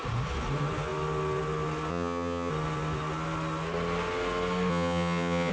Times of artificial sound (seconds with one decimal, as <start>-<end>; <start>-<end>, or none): 1.9-2.5; 4.7-5.5